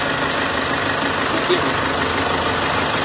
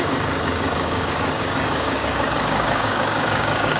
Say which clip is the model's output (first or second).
second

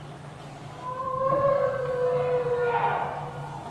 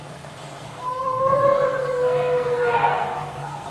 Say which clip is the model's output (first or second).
second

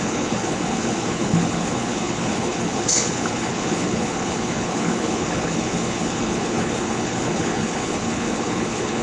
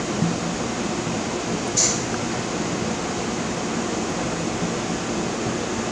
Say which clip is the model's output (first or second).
first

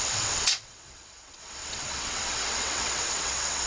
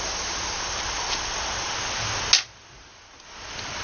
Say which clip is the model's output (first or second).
first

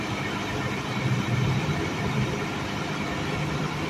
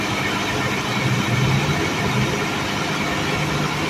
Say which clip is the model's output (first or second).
first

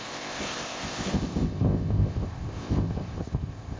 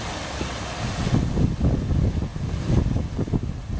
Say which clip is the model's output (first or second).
first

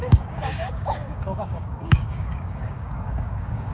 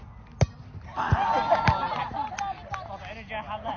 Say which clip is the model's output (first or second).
first